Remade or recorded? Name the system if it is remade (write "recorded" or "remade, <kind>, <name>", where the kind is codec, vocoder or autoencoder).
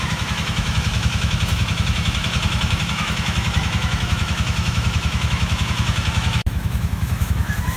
remade, autoencoder, DAC-VAE